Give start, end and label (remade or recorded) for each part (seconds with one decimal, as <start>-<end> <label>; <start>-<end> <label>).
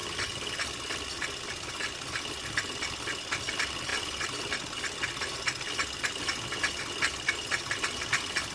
0.0-8.5 recorded